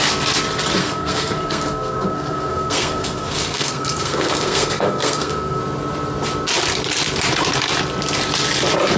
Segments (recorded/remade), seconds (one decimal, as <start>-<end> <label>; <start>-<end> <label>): 0.0-0.8 recorded; 0.8-5.6 remade; 5.6-9.0 recorded